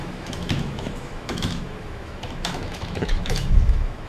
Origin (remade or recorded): remade